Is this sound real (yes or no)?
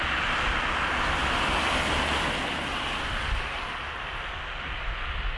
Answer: yes